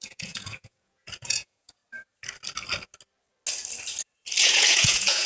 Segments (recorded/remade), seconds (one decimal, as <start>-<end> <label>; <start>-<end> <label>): 0.0-1.8 remade; 1.8-4.4 recorded; 4.4-5.3 remade